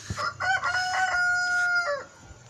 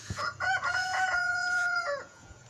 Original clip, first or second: first